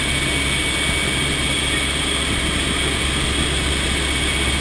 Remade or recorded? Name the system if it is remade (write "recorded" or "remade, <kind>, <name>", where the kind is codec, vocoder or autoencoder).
recorded